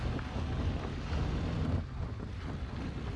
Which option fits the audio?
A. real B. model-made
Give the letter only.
A